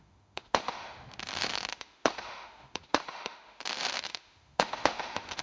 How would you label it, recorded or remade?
remade